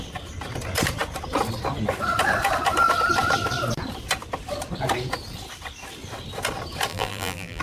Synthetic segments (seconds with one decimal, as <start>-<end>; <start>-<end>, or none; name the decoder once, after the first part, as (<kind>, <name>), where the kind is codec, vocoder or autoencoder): 6.9-7.6 (vocoder, BigVGAN v2)